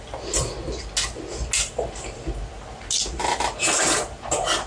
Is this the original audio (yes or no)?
yes